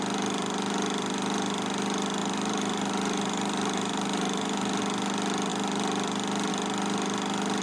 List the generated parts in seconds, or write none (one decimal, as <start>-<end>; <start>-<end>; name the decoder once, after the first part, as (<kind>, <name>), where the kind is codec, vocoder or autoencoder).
2.2-4.8 (vocoder, BigVGAN v2)